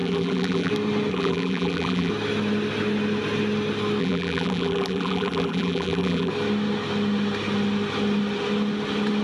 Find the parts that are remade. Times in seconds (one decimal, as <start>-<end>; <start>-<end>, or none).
0.0-0.7; 1.1-2.1; 4.0-6.3